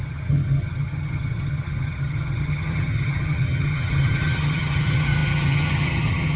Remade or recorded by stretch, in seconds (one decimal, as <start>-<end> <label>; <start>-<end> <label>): 0.0-6.4 remade